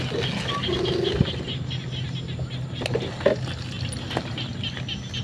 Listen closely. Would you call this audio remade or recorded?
recorded